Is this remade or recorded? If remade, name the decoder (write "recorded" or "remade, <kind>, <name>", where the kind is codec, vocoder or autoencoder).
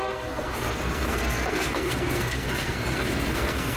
remade, codec, SNAC